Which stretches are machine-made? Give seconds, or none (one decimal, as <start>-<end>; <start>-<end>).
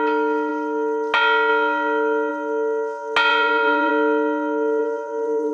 3.3-3.9; 4.8-5.5